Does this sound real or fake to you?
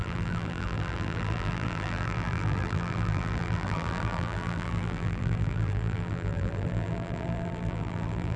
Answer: fake